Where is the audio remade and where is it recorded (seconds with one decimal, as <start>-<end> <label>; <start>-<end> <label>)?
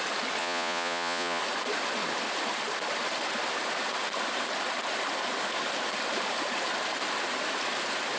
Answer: 0.0-0.4 recorded; 0.4-1.4 remade; 1.4-8.2 recorded